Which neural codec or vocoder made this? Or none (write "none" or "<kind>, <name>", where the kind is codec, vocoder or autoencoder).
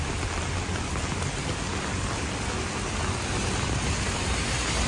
none